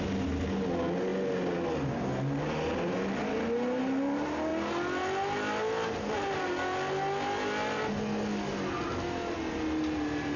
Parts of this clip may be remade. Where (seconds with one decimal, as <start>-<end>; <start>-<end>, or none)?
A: none